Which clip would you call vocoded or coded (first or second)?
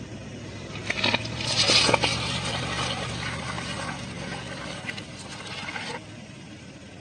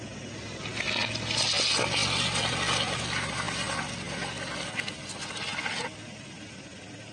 first